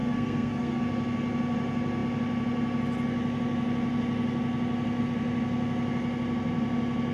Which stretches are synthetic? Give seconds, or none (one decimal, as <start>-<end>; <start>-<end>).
0.0-0.8